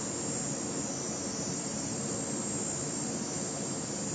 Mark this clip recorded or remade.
recorded